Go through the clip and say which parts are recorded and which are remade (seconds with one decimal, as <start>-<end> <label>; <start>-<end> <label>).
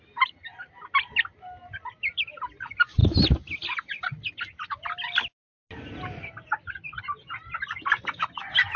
0.0-0.5 remade; 0.5-1.9 recorded; 1.9-3.0 remade; 3.0-7.0 recorded; 7.0-8.8 remade